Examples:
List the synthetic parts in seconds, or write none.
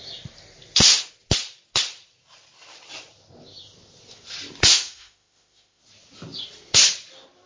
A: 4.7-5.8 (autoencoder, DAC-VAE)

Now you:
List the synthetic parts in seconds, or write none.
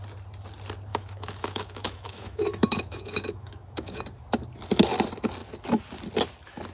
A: 0.9-4.0 (autoencoder, DAC-VAE)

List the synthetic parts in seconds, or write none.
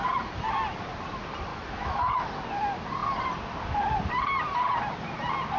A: 1.5-2.3 (autoencoder, DAC-VAE)